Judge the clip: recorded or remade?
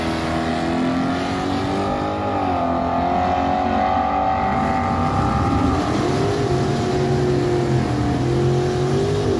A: recorded